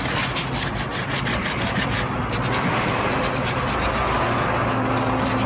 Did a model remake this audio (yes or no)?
no